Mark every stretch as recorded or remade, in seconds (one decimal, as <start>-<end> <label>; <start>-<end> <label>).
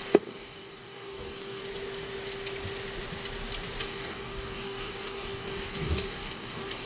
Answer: 0.0-1.6 remade; 1.6-3.8 recorded; 3.8-6.9 remade